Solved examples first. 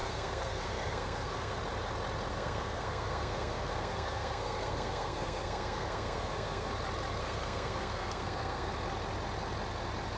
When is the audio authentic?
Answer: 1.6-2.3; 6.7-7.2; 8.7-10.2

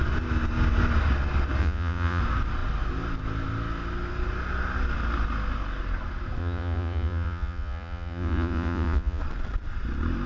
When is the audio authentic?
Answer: 0.0-1.6; 2.2-6.4; 9.2-10.3

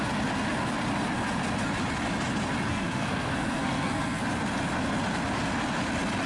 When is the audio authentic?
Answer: 0.0-2.7; 4.2-6.3

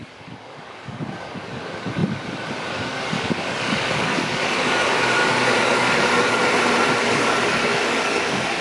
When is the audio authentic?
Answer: 6.4-7.0

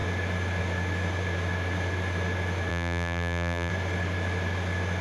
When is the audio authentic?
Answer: 0.0-2.7; 3.7-5.0

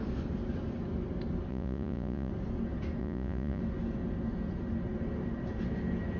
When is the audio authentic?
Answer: 0.0-1.5; 2.3-3.0; 3.6-6.2

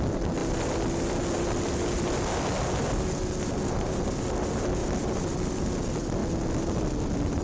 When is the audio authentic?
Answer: 0.0-7.4